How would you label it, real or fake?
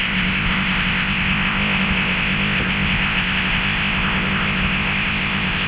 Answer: fake